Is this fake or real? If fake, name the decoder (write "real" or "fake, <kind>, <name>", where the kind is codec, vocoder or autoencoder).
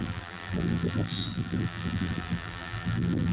fake, vocoder, BigVGAN v2